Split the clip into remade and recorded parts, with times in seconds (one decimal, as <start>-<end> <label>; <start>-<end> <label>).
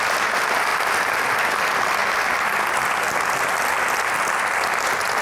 0.0-0.7 recorded; 0.7-1.3 remade; 1.3-5.2 recorded